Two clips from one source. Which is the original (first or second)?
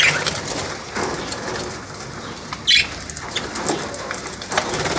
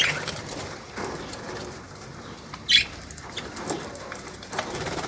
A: first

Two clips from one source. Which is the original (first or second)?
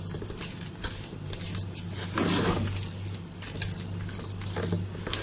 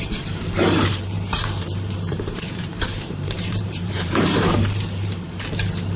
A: first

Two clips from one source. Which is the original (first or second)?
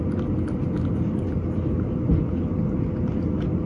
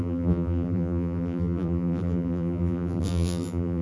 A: first